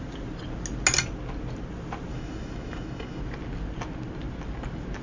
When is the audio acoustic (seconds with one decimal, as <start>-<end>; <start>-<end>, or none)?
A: 0.0-2.1; 3.2-5.0